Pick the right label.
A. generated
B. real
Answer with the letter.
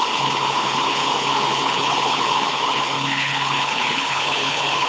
A